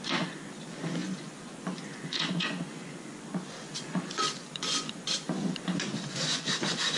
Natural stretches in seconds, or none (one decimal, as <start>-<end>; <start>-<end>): none